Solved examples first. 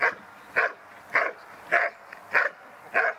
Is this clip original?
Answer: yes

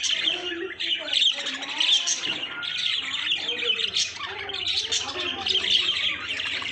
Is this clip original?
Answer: yes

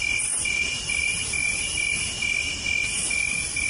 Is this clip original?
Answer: yes